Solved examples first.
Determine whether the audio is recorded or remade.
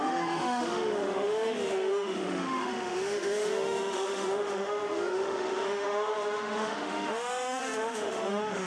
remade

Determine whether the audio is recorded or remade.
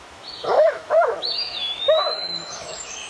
remade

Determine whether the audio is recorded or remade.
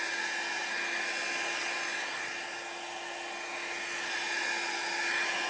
recorded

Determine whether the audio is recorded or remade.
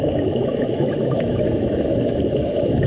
remade